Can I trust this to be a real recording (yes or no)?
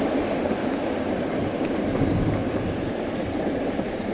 yes